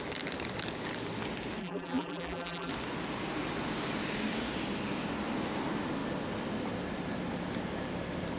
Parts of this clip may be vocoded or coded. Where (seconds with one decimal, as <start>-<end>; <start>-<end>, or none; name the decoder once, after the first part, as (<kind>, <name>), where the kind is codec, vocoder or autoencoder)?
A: 1.6-2.7 (vocoder, BigVGAN v2)